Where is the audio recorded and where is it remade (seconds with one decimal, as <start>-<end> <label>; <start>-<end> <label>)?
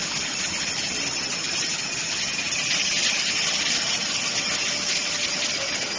0.0-6.0 recorded